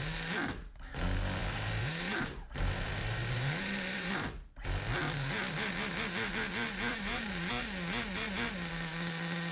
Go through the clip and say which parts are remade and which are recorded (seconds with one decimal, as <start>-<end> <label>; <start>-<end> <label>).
0.0-1.4 recorded; 1.4-4.1 remade; 4.1-6.9 recorded; 6.9-7.5 remade; 7.5-9.5 recorded

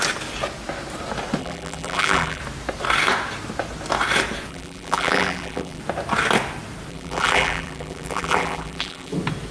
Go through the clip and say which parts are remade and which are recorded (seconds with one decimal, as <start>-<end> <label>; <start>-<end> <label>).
0.0-1.4 recorded; 1.4-2.4 remade; 2.4-4.5 recorded; 4.5-5.8 remade; 5.8-6.9 recorded; 6.9-9.1 remade; 9.1-9.5 recorded

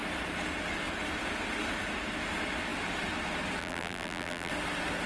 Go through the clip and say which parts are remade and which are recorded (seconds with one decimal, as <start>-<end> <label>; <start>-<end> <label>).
0.0-3.6 recorded; 3.6-4.5 remade; 4.5-5.1 recorded

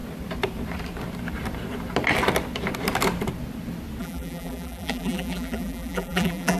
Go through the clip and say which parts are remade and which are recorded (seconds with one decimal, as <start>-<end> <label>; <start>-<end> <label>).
0.0-4.0 recorded; 4.0-6.6 remade

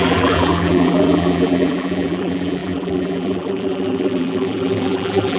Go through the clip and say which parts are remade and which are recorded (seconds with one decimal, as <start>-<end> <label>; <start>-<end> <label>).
0.0-5.4 remade

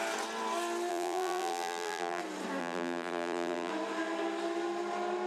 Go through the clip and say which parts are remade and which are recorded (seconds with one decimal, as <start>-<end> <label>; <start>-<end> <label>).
0.0-0.9 recorded; 0.9-2.2 remade; 2.2-2.6 recorded; 2.6-3.7 remade; 3.7-5.3 recorded